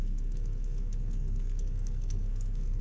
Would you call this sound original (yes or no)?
no